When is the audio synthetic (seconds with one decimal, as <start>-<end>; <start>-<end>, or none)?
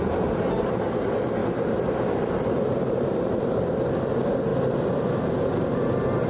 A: 1.4-4.0; 4.5-5.2